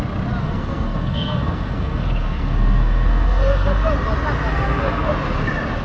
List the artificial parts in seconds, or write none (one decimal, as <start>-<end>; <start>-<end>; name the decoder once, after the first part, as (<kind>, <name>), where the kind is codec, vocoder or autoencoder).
0.4-3.9 (codec, SNAC); 4.5-5.1